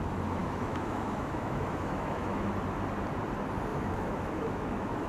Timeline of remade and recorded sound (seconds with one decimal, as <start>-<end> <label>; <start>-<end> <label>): 0.0-0.4 recorded; 0.4-2.5 remade; 2.5-3.7 recorded; 3.7-5.1 remade